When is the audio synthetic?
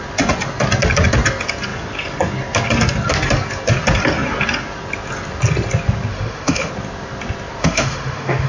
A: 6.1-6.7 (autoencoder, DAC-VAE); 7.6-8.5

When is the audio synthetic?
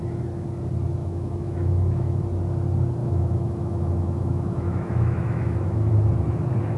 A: 1.0-2.2 (autoencoder, DAC-VAE); 3.0-5.9